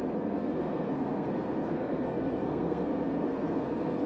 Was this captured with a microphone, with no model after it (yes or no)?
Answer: no